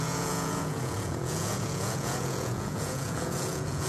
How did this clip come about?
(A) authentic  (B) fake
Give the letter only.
B